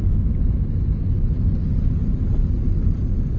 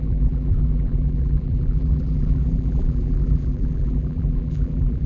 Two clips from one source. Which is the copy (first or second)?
second